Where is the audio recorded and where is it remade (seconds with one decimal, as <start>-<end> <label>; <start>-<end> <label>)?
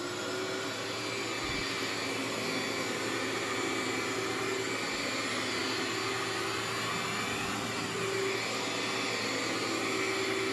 0.0-10.5 recorded